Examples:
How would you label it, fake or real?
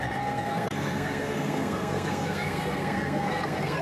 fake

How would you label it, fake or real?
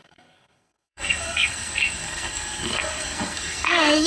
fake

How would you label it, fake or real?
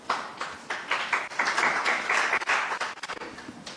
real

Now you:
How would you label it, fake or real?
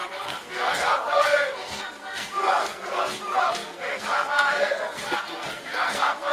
fake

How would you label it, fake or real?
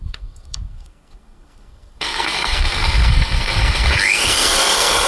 fake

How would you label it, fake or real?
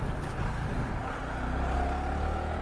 real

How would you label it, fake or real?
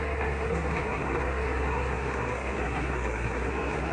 fake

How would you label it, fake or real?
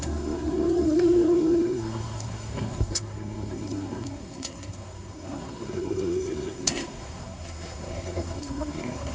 fake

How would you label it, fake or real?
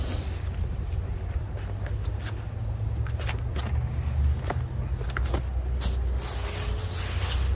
real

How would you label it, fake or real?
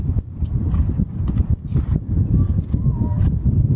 real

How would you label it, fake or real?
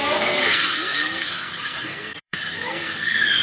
fake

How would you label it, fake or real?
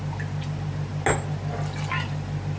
real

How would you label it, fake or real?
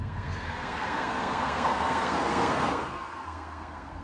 fake